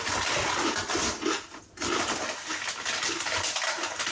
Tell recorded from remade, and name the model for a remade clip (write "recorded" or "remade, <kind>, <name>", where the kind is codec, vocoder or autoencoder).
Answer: recorded